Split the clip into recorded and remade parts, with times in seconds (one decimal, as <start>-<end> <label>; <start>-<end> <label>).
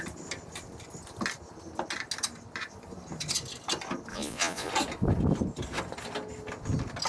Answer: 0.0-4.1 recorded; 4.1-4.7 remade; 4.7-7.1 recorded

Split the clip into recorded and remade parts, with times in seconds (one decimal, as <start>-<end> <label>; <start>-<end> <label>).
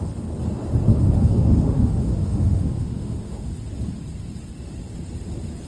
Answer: 0.0-0.9 recorded; 0.9-3.5 remade; 3.5-5.7 recorded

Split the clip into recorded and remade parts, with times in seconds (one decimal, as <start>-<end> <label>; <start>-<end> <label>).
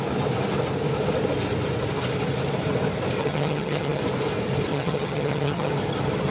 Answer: 0.0-3.2 recorded; 3.2-4.0 remade; 4.0-4.7 recorded; 4.7-5.7 remade; 5.7-6.3 recorded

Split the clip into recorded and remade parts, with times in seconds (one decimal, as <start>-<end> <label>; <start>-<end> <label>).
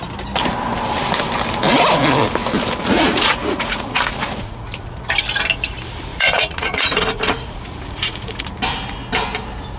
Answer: 0.0-2.8 recorded; 2.8-5.1 remade; 5.1-6.1 recorded; 6.1-8.4 remade; 8.4-9.8 recorded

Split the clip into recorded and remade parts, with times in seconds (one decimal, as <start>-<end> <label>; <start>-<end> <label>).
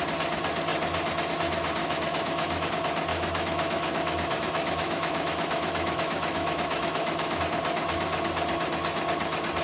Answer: 0.0-1.8 recorded; 1.8-2.7 remade; 2.7-3.1 recorded; 3.1-7.4 remade; 7.4-9.6 recorded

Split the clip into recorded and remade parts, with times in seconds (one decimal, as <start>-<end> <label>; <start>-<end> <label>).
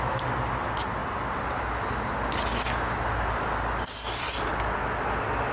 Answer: 0.0-5.5 recorded